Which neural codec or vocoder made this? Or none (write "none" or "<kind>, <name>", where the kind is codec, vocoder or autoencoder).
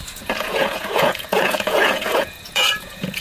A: vocoder, Vocos